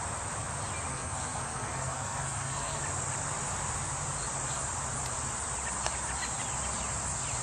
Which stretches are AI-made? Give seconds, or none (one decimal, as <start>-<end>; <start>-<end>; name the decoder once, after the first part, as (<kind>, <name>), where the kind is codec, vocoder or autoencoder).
0.9-2.8 (codec, SNAC)